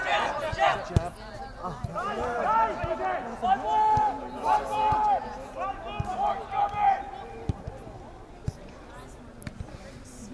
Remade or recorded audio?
recorded